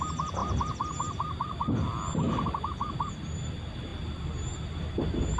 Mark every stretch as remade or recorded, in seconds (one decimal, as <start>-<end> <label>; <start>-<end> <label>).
0.0-5.4 recorded